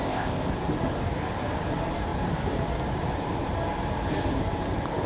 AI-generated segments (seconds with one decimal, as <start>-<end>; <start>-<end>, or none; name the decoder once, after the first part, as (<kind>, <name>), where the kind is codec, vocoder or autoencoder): 0.0-0.5 (codec, ZipCodec)